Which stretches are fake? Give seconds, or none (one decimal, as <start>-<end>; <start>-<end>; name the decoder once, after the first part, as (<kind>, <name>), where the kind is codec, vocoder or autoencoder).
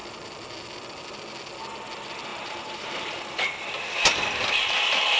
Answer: 2.3-3.1 (vocoder, BigVGAN v2)